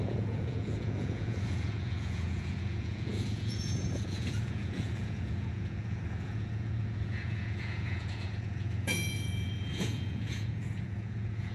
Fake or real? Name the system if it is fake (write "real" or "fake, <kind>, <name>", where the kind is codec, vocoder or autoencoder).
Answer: fake, vocoder, Vocos